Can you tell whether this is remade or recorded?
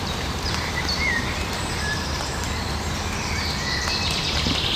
remade